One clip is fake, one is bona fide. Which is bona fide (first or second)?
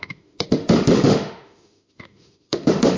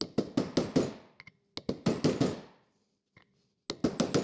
second